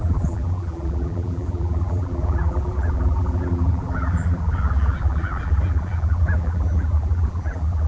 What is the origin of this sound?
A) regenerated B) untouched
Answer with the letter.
A